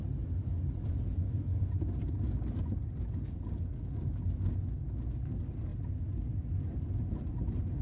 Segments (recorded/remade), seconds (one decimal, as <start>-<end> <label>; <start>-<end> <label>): 0.0-1.2 recorded; 1.2-1.7 remade; 1.7-7.8 recorded